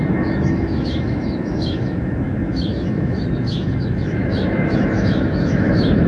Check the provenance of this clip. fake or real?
fake